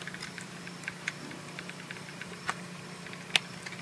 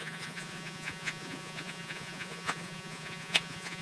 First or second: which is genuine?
first